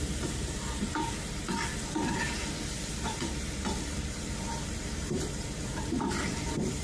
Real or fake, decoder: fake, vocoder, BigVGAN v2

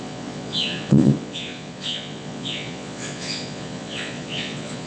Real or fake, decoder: fake, vocoder, Vocos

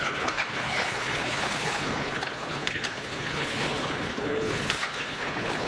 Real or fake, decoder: fake, codec, HILCodec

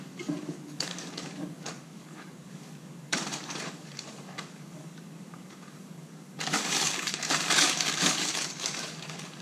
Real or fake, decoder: fake, codec, DAC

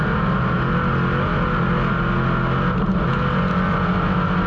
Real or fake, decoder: real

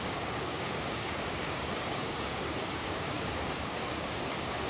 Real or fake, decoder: fake, codec, DAC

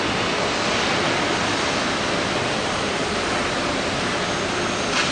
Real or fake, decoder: real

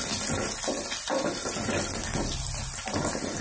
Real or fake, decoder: real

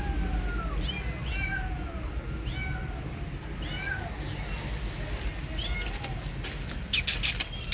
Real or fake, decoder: real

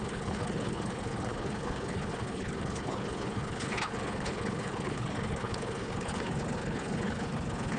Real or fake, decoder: fake, codec, HILCodec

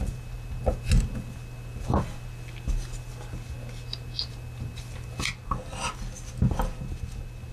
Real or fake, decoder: real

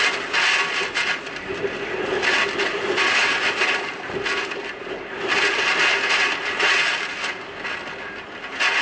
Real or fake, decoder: real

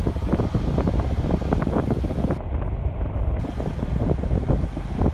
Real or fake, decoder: real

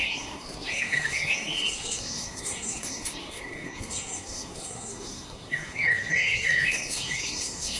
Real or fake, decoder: fake, codec, SNAC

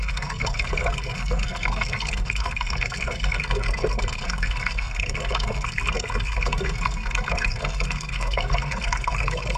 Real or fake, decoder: fake, codec, SNAC